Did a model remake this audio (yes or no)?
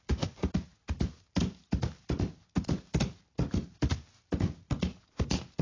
no